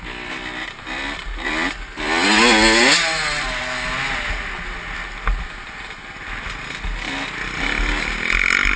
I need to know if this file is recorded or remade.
recorded